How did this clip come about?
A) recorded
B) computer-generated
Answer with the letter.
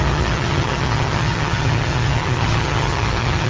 B